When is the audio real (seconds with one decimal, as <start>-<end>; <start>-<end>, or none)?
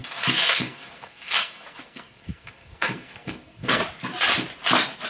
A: 3.8-5.1